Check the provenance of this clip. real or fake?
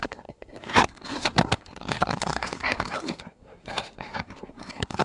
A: fake